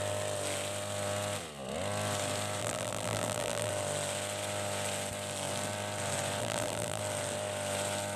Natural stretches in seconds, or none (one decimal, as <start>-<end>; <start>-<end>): 0.0-2.6; 3.7-6.4; 7.0-8.2